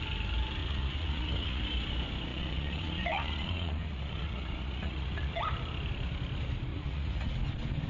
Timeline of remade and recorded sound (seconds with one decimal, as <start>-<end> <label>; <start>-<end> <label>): 0.0-0.6 recorded; 0.6-1.6 remade; 1.6-2.3 recorded; 2.3-5.4 remade; 5.4-6.7 recorded; 6.7-7.3 remade; 7.3-7.9 recorded